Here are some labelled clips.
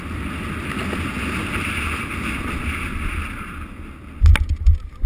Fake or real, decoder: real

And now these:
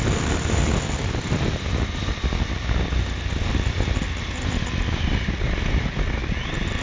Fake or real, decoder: real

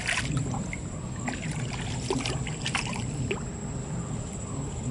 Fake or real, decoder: real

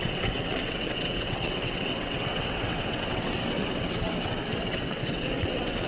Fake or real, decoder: fake, vocoder, WaveNeXt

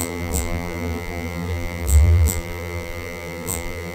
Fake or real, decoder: fake, vocoder, BigVGAN v2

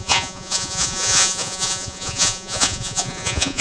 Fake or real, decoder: fake, vocoder, Vocos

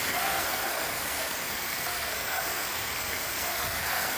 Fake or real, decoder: fake, codec, SNAC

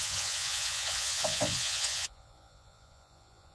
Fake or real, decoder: fake, vocoder, Vocos